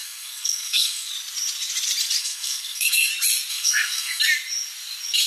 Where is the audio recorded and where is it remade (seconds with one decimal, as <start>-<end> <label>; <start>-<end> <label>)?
0.0-1.1 remade; 1.1-2.2 recorded; 2.2-3.1 remade; 3.1-3.5 recorded; 3.5-4.2 remade; 4.2-5.3 recorded